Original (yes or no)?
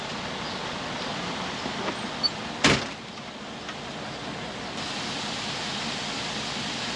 yes